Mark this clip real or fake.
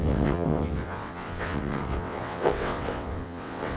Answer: fake